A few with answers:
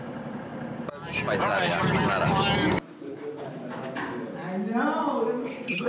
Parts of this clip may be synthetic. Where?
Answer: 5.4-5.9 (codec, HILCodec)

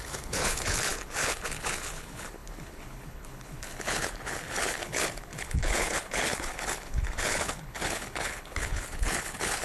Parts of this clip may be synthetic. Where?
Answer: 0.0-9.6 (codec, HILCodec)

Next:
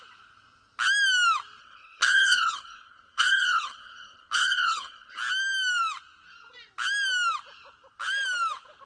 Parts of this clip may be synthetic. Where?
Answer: 1.6-5.2 (codec, HILCodec)